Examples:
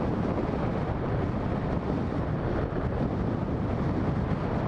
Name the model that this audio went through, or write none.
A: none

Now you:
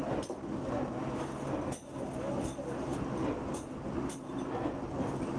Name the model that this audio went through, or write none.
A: none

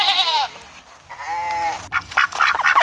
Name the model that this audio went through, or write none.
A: vocoder, BigVGAN v2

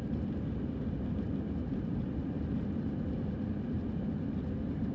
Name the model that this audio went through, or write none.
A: none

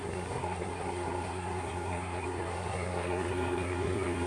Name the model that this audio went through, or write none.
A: codec, SNAC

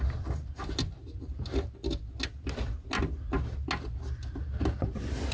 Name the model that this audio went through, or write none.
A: none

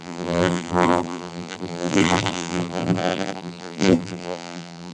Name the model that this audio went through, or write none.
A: vocoder, BigVGAN v2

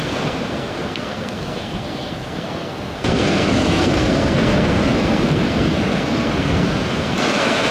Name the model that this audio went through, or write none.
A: codec, SNAC